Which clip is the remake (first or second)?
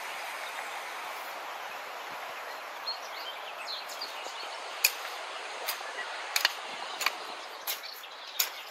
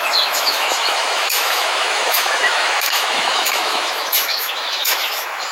second